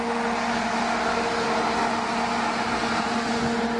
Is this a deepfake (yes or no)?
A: no